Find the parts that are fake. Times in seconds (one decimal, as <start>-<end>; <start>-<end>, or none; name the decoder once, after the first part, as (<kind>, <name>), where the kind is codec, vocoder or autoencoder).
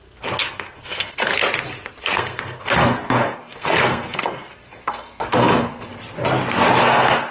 0.0-1.3 (codec, SNAC); 2.0-5.9; 6.8-7.3